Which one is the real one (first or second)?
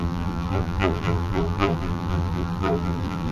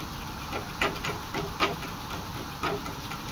second